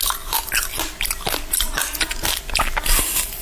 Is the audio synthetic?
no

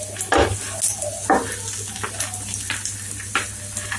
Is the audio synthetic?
no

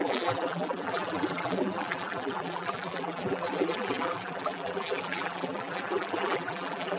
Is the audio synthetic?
yes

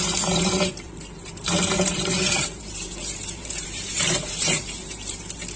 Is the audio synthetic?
yes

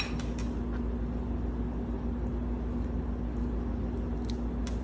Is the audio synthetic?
no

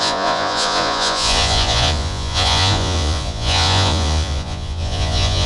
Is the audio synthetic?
yes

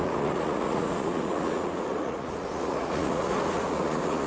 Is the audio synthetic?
yes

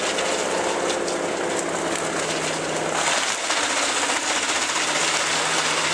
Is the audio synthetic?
no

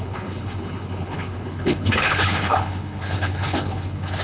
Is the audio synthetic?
yes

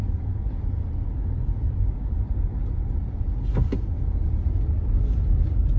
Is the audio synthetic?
no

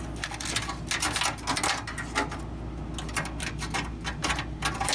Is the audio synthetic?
no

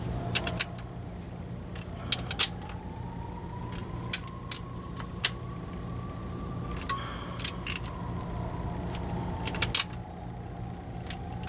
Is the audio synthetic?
no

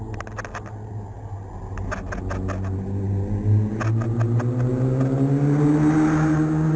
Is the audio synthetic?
no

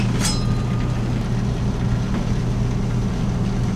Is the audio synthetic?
no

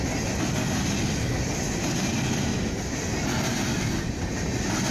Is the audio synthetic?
no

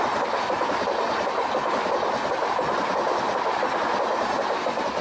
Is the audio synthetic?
no